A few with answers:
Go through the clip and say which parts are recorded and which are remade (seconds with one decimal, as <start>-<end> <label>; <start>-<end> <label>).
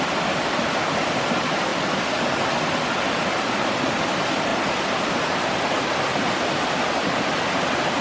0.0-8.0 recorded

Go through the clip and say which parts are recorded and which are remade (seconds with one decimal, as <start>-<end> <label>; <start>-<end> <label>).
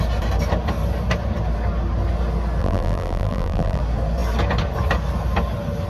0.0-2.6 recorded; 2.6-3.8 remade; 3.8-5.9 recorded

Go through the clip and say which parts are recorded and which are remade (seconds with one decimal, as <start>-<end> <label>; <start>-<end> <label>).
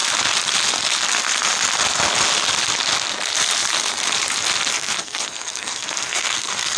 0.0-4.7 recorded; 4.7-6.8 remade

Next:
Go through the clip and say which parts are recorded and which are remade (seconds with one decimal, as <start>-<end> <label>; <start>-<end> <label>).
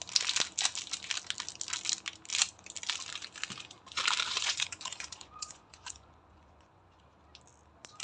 0.0-4.3 recorded; 4.3-7.0 remade; 7.0-8.0 recorded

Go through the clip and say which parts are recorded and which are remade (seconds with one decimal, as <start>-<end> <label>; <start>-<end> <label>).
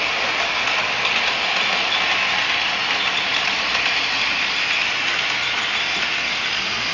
0.0-6.9 recorded